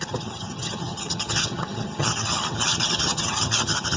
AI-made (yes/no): yes